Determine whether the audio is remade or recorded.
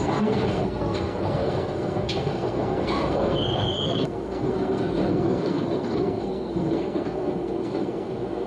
remade